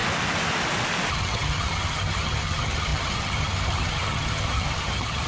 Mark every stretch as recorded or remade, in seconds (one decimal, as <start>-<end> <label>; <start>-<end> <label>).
0.0-1.1 recorded; 1.1-5.3 remade